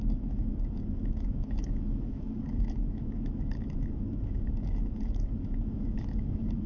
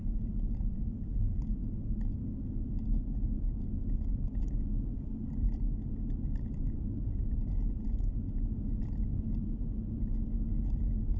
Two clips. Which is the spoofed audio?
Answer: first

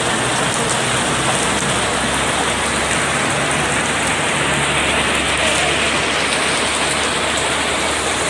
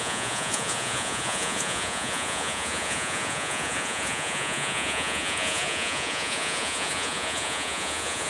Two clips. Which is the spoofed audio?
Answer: second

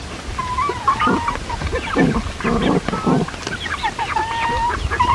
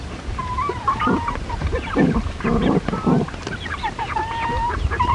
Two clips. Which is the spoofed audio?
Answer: second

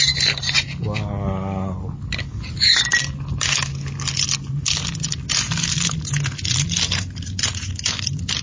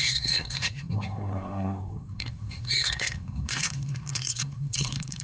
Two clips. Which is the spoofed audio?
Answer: second